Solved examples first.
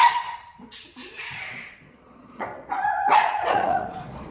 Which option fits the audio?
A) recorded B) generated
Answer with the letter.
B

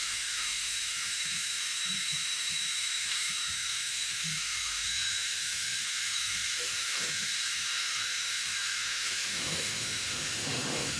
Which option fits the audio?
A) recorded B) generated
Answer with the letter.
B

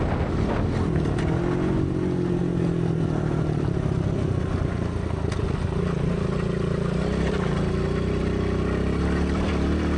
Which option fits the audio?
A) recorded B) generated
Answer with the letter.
A